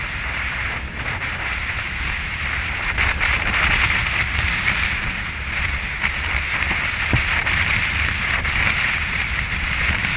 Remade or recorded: remade